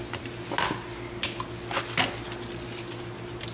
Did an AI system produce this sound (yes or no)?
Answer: no